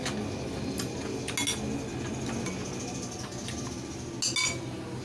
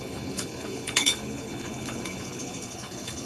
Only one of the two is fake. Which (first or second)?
second